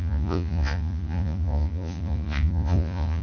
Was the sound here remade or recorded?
remade